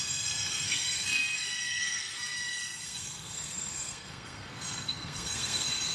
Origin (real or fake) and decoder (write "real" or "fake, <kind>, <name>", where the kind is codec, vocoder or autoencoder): fake, codec, SNAC